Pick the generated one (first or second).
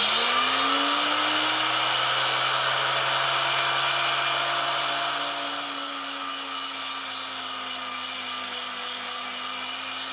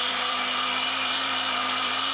second